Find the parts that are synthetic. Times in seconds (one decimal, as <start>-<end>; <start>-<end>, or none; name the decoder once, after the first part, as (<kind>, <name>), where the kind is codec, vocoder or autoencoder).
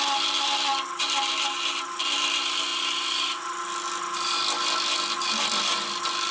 none